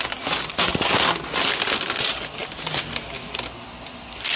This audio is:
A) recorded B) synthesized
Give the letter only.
A